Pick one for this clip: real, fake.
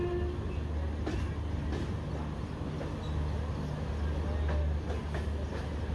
real